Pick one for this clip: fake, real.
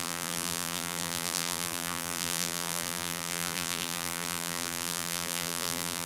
fake